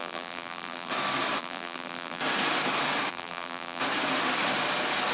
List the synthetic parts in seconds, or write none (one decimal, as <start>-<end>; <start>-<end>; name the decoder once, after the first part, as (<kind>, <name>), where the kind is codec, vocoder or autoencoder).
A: 0.0-0.9 (vocoder, BigVGAN v2); 1.4-2.2; 3.1-3.8